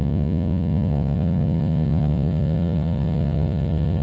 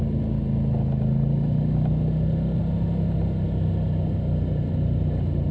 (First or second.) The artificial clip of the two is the first